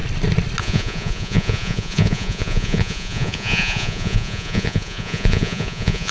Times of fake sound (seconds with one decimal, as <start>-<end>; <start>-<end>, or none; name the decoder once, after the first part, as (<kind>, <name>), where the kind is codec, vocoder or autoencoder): 0.6-6.1 (vocoder, Vocos)